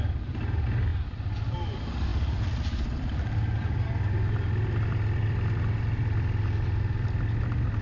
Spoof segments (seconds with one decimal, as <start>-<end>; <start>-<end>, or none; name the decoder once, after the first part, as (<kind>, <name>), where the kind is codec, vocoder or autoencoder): none